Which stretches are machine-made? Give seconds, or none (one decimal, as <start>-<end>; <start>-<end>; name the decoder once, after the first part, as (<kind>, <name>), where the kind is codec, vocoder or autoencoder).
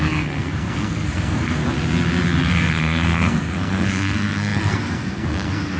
0.0-1.6 (codec, SNAC); 2.7-5.8